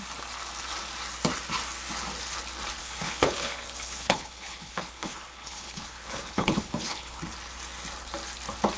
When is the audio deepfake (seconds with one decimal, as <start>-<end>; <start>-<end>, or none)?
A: 2.8-7.2